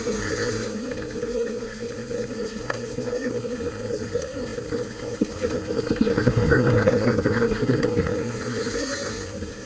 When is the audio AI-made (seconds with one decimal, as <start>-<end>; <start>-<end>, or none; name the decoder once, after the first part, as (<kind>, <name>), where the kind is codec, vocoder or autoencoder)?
0.0-9.7 (codec, SNAC)